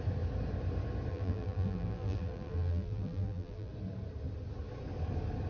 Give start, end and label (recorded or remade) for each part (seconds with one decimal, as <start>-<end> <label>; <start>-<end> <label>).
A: 0.0-1.1 recorded; 1.1-3.7 remade; 3.7-5.5 recorded